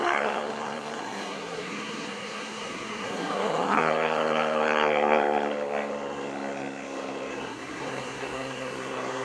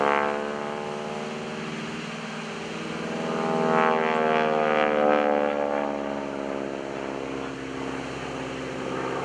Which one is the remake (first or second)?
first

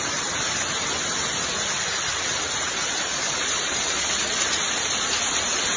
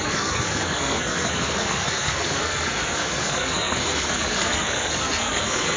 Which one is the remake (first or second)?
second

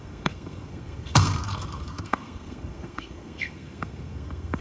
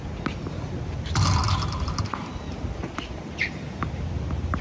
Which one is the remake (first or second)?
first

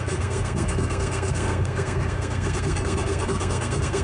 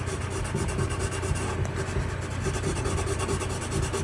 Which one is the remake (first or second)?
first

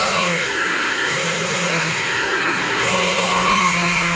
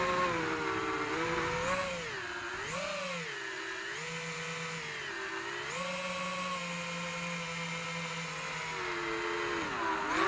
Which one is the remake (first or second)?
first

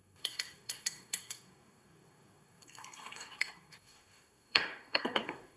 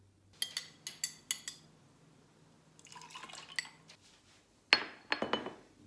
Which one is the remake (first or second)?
first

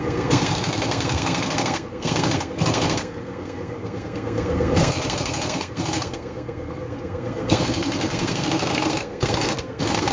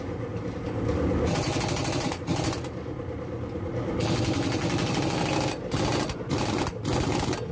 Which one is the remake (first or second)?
first